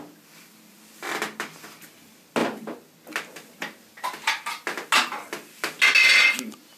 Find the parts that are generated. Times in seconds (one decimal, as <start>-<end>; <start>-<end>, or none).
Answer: none